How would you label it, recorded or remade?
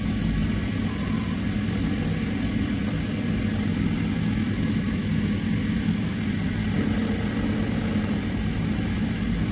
recorded